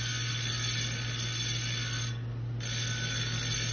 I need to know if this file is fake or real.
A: real